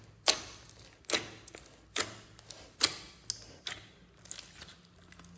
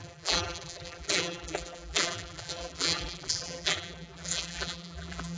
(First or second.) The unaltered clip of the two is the first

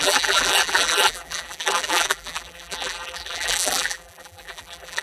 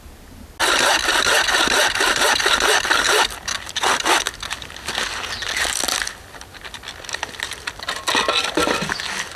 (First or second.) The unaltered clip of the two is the second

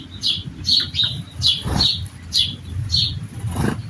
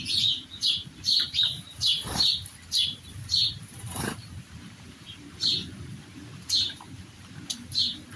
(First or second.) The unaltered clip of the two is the first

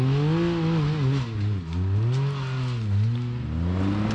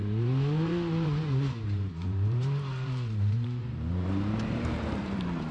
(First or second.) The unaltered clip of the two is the first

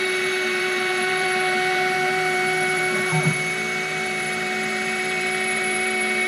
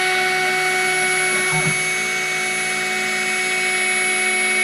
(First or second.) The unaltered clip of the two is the second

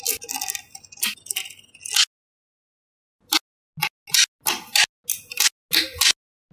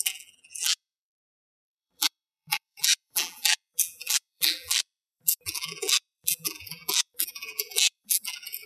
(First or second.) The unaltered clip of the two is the first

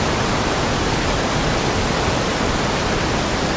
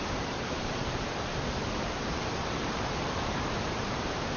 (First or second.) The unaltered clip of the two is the first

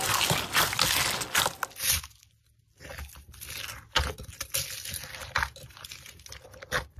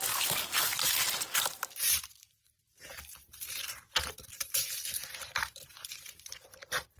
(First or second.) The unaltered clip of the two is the first